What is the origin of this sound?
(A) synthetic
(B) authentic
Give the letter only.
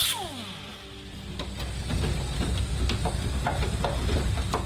B